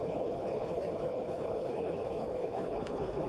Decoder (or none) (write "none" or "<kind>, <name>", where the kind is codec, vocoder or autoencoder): codec, HILCodec